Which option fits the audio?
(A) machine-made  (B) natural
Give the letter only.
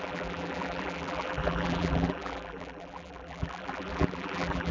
A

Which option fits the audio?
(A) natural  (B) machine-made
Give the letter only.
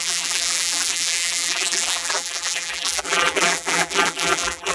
B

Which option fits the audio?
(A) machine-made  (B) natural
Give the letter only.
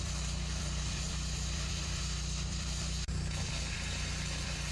A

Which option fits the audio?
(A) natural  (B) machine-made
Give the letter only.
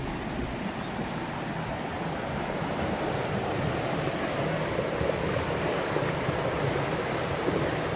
A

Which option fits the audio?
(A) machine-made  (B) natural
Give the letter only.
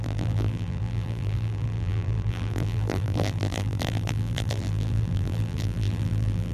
A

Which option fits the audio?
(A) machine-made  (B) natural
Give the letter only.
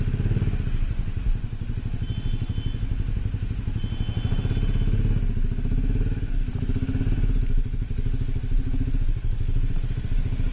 B